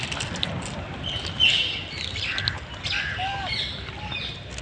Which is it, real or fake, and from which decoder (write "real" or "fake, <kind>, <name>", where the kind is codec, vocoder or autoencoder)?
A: real